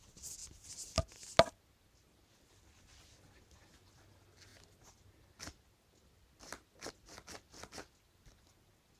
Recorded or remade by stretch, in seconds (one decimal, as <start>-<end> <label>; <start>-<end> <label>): 0.0-9.0 recorded